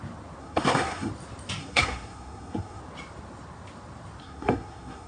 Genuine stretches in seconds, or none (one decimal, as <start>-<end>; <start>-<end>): 0.0-0.4; 1.1-1.6; 2.8-4.2